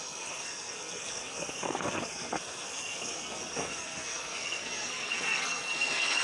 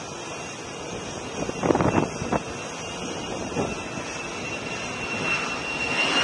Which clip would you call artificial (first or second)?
first